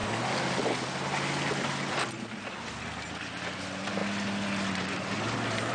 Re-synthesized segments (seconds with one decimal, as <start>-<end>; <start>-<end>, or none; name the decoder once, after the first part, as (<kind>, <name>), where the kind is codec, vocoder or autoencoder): none